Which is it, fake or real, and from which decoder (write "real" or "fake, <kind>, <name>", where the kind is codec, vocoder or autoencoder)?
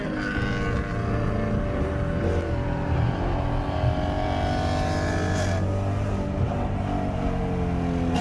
real